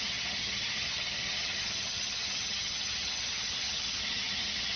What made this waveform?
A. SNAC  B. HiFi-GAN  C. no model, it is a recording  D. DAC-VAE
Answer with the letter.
B